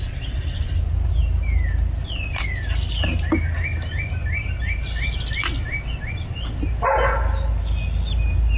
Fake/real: real